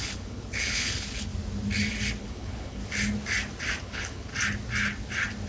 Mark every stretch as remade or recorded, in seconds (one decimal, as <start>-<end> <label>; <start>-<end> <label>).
0.0-1.3 remade; 1.3-2.2 recorded; 2.2-2.8 remade; 2.8-3.8 recorded; 3.8-4.3 remade; 4.3-5.5 recorded